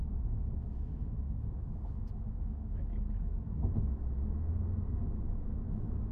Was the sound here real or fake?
fake